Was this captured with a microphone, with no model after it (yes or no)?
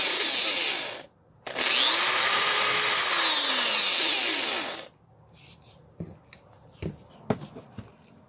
yes